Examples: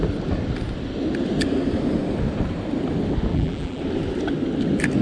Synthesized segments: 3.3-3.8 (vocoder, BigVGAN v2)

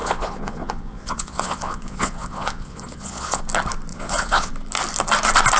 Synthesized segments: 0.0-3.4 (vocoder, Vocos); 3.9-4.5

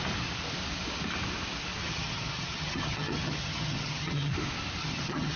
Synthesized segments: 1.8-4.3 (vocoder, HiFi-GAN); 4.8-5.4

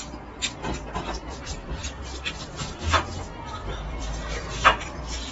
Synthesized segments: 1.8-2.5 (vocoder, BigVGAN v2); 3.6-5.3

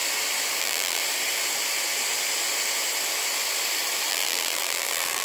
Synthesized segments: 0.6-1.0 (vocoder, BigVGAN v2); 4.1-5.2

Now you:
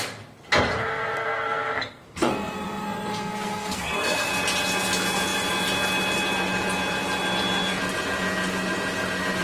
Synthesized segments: 0.8-4.3 (codec, SNAC)